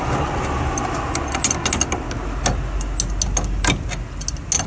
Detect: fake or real real